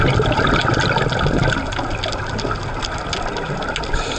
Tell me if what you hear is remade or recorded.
recorded